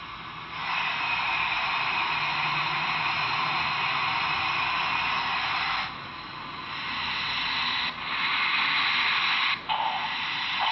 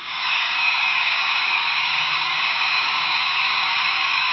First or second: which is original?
first